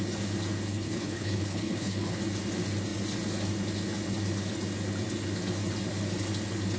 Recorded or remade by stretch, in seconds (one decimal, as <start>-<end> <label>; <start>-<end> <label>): 0.0-0.7 recorded; 0.7-2.2 remade; 2.2-6.8 recorded